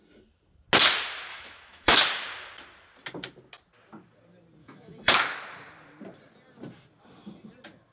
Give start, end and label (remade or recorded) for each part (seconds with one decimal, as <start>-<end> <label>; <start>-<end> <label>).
0.0-1.3 recorded; 1.3-2.0 remade; 2.0-4.6 recorded; 4.6-5.1 remade; 5.1-7.9 recorded